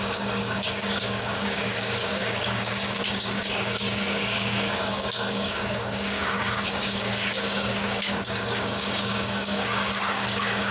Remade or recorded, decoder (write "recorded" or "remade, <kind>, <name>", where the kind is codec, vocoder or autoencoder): remade, codec, DAC